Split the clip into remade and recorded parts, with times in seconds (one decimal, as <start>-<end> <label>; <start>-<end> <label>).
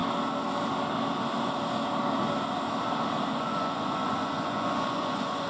0.0-3.3 recorded; 3.3-5.5 remade